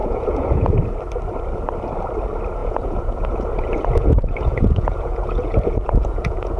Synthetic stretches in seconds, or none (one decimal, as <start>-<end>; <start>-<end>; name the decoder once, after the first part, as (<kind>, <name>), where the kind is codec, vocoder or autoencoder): 0.0-0.8 (vocoder, Vocos); 2.6-6.6